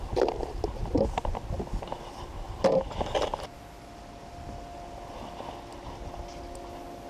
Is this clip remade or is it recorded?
recorded